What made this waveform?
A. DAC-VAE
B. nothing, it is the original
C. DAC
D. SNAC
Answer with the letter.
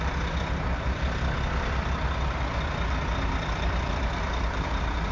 B